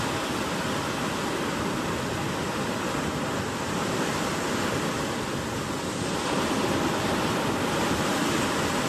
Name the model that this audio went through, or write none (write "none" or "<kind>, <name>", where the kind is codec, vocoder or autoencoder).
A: none